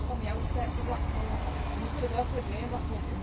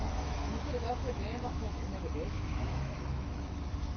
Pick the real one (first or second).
first